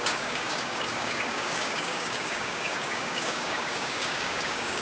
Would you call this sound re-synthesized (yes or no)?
yes